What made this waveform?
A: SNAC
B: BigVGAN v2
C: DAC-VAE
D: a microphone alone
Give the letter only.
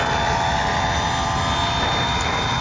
D